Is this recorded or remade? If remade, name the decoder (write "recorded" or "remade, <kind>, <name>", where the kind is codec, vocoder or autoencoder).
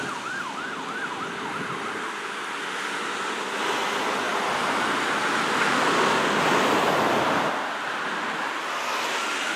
recorded